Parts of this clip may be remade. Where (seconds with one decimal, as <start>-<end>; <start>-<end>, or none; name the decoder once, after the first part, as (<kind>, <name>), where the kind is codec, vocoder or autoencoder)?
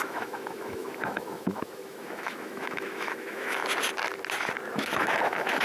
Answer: 0.0-3.6 (autoencoder, DAC-VAE); 4.7-5.6